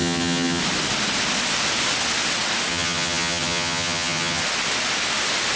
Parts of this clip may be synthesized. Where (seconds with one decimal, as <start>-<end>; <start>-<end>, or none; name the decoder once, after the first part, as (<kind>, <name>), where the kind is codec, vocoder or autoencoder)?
0.0-0.6 (vocoder, HiFi-GAN); 2.7-4.4